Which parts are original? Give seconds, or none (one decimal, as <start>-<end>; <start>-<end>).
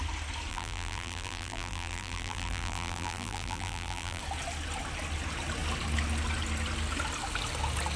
0.0-0.5; 4.2-8.0